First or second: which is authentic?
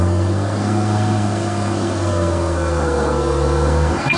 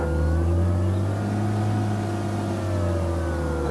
second